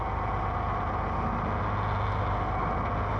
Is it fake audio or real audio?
real